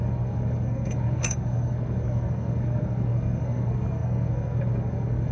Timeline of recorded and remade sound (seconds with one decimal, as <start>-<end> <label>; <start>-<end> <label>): 0.0-5.3 remade